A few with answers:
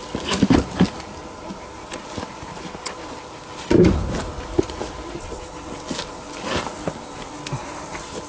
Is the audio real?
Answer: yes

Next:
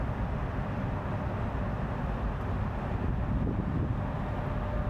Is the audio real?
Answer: yes